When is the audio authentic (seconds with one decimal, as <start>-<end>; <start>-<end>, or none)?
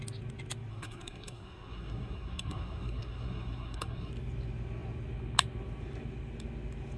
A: 0.0-0.7; 4.1-7.0